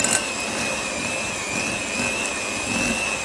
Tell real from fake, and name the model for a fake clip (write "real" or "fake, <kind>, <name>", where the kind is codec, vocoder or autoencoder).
real